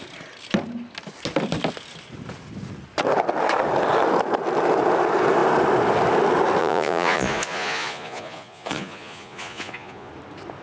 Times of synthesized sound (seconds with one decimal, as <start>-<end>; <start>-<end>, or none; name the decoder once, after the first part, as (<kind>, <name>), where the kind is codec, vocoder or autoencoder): 6.6-10.1 (vocoder, Vocos)